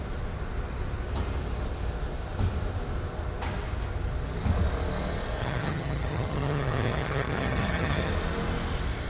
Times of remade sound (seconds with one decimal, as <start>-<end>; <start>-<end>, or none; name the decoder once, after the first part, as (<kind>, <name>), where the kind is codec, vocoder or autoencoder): 5.4-8.1 (vocoder, HiFi-GAN)